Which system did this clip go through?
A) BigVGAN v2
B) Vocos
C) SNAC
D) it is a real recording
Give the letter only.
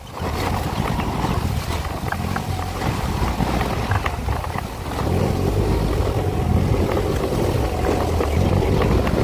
D